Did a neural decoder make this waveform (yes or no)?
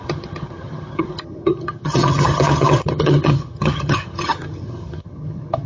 yes